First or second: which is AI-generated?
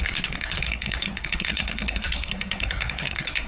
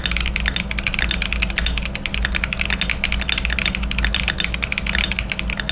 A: first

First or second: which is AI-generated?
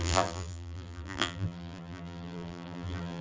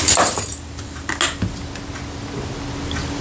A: first